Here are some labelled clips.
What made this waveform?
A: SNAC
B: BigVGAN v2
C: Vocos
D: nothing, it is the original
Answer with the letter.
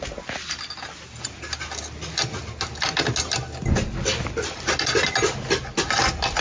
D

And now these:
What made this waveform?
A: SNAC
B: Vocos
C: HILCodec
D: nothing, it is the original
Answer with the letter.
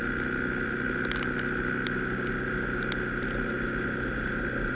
D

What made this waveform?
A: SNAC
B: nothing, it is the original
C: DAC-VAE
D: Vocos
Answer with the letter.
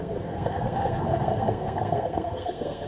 A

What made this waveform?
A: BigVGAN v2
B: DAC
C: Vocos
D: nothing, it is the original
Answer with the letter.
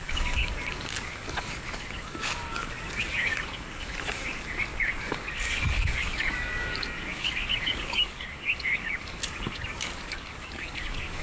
B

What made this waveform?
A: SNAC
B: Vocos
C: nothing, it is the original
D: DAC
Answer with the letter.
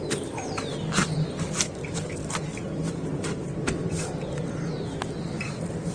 C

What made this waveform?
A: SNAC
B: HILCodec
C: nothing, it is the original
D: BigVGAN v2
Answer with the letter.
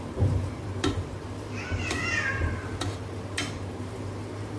D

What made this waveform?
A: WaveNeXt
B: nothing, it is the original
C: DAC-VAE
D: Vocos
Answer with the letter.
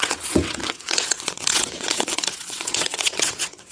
A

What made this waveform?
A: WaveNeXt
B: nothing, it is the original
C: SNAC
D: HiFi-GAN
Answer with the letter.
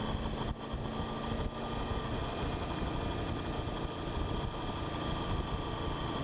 B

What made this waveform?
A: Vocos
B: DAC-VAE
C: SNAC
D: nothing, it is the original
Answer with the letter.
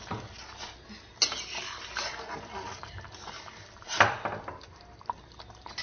D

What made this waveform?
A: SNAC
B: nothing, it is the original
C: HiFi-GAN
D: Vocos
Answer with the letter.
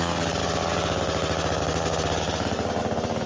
B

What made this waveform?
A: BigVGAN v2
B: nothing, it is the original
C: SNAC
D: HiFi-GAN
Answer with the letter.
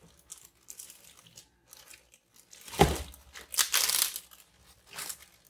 B